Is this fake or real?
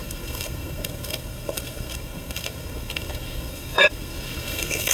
fake